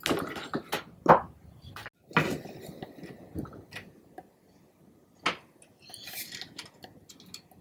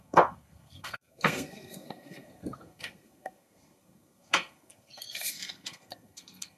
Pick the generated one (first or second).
second